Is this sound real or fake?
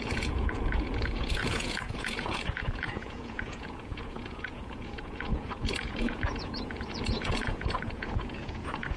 fake